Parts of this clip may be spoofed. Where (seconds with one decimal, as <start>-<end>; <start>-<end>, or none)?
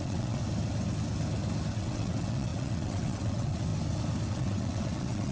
0.0-0.4; 1.7-3.7; 4.3-5.3